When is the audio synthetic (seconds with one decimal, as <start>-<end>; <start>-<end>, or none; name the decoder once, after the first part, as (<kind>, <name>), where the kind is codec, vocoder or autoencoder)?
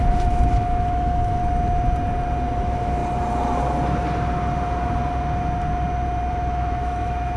0.0-1.4 (autoencoder, DAC-VAE); 2.6-3.0; 6.3-7.4